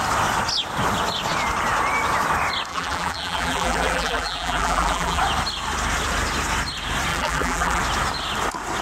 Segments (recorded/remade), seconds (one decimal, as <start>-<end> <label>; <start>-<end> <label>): 0.0-2.7 recorded; 2.7-5.2 remade; 5.2-7.1 recorded; 7.1-7.8 remade; 7.8-8.8 recorded